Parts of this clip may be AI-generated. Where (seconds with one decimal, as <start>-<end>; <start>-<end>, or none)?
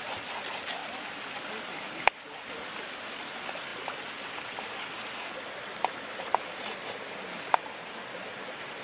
0.8-2.9